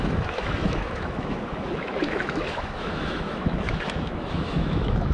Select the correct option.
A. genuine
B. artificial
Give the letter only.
B